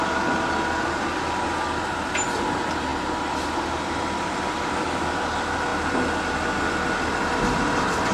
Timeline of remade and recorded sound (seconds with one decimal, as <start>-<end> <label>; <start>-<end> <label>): 0.0-8.1 recorded